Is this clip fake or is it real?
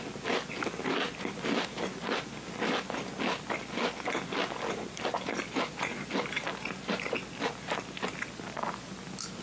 real